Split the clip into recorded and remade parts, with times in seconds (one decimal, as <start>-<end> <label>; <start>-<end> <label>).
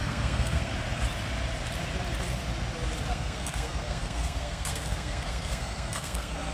0.0-0.7 remade; 0.7-3.1 recorded; 3.1-6.5 remade